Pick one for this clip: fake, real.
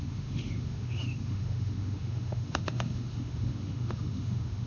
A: fake